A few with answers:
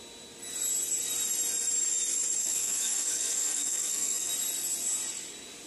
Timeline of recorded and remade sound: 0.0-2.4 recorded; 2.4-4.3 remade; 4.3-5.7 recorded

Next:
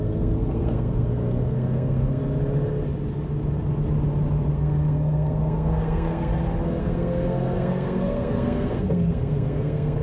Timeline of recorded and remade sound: 0.0-2.2 remade; 2.2-4.5 recorded; 4.5-6.3 remade; 6.3-6.8 recorded; 6.8-10.0 remade